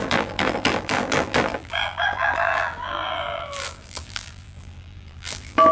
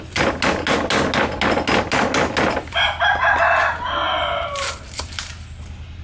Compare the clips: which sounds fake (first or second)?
first